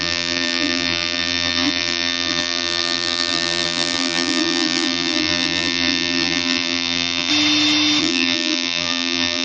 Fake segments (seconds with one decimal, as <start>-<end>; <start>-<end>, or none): 0.0-7.3; 8.0-9.4